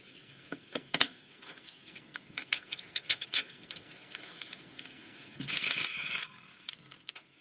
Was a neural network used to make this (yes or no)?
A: yes